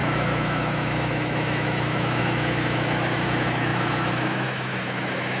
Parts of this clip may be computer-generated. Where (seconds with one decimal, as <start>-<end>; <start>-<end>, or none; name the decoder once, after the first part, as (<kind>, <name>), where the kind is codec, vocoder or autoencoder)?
0.0-5.4 (autoencoder, DAC-VAE)